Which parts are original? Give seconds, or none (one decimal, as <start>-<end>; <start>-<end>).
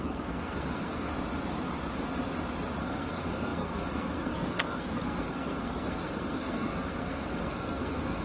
1.1-2.8